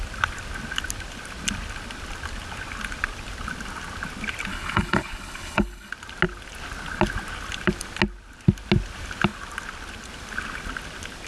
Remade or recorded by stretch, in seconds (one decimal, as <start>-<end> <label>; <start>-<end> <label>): 0.0-4.5 recorded; 4.5-5.9 remade; 5.9-11.3 recorded